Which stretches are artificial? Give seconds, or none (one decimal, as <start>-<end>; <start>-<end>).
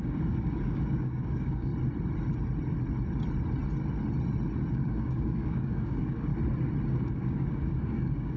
0.0-1.7; 4.7-6.3; 6.9-8.4